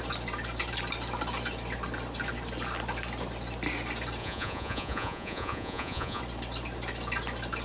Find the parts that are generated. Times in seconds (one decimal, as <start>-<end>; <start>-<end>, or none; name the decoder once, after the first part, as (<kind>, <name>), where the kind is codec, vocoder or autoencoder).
4.2-6.2 (vocoder, Vocos)